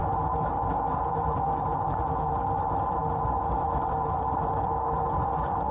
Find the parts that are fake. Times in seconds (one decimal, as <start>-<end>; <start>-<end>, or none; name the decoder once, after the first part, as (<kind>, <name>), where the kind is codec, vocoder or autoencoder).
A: 1.1-1.7 (vocoder, BigVGAN v2); 2.3-3.0; 3.5-5.7